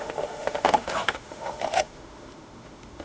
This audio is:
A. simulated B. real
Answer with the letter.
A